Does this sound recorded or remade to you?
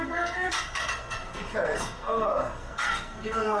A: remade